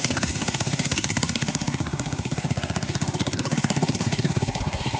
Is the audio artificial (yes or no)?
yes